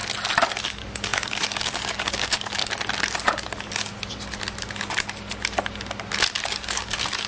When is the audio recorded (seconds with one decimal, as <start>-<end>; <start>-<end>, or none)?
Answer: 0.0-0.6; 2.6-6.4

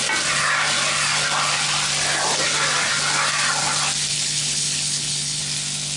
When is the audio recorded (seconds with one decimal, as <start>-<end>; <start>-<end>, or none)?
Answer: 0.0-4.1; 5.4-6.0